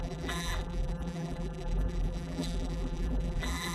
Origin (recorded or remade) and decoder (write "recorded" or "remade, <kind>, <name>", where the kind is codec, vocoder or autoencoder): remade, vocoder, BigVGAN v2